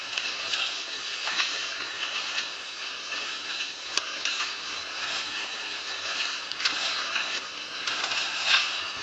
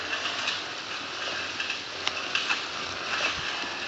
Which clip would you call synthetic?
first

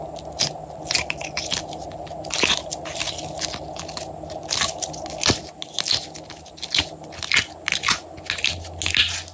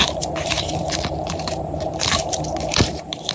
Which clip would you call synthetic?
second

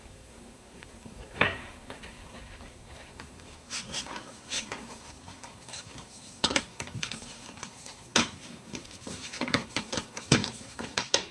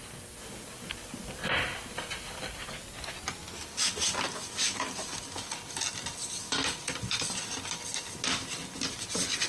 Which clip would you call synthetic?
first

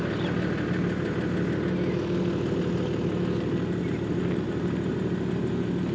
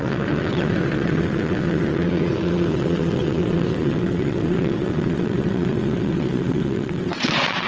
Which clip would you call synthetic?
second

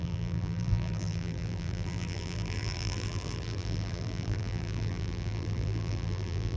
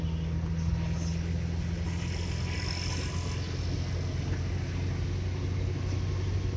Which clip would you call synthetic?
first